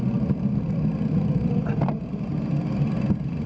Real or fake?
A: real